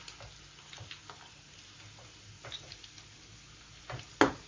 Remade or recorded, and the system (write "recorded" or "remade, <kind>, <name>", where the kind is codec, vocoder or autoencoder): recorded